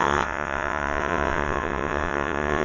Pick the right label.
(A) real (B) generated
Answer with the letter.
B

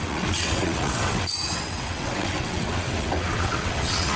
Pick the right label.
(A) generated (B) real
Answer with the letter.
A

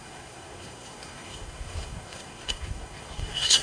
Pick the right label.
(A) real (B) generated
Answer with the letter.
B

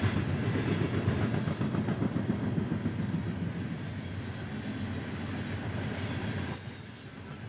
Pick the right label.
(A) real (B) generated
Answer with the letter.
A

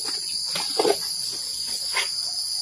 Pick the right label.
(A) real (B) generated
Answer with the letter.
A